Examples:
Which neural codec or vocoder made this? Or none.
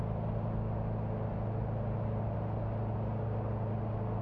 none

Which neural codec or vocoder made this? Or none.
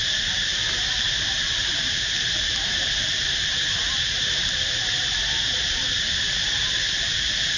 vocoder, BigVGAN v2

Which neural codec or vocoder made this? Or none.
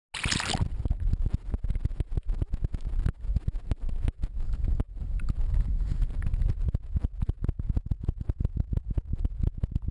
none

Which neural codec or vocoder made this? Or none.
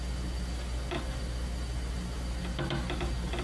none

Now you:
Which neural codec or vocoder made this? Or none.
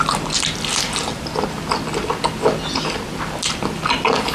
none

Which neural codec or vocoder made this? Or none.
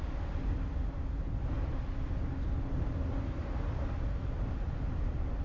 none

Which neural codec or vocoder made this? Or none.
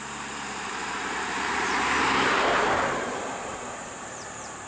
vocoder, BigVGAN v2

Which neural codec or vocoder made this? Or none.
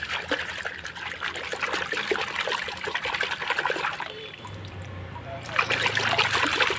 vocoder, BigVGAN v2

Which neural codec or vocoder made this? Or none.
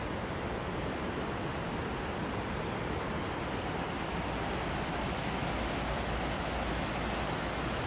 none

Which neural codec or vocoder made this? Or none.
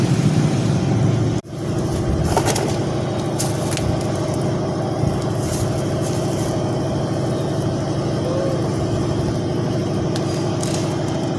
none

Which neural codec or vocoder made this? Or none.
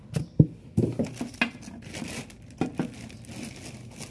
none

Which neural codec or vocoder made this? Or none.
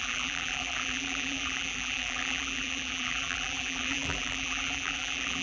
vocoder, BigVGAN v2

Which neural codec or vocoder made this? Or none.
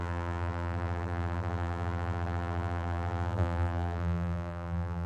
vocoder, BigVGAN v2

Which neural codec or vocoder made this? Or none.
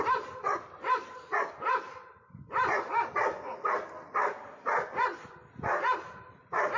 none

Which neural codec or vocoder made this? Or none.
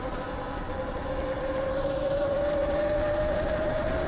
vocoder, BigVGAN v2